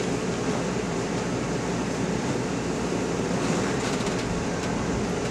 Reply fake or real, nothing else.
fake